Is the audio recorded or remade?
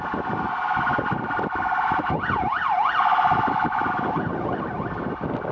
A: recorded